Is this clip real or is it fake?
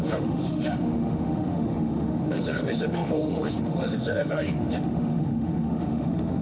fake